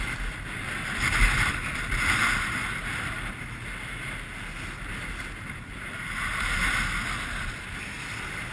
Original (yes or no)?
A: yes